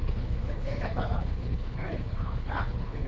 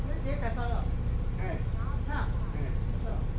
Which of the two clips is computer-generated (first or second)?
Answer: first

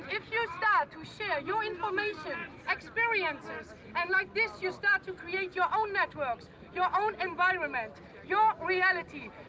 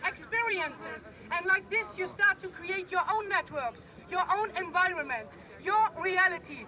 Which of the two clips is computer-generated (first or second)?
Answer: second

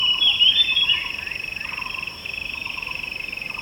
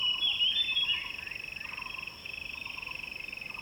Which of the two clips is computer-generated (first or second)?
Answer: first